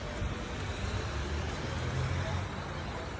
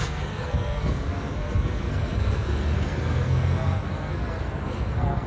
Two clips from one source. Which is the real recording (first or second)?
first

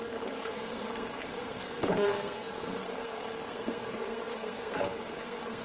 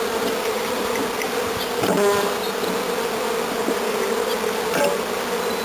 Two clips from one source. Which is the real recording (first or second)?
second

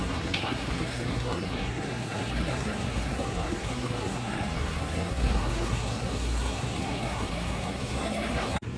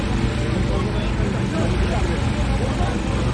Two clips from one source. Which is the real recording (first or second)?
second